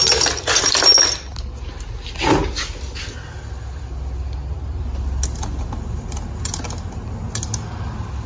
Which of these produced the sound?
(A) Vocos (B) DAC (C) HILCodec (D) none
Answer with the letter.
D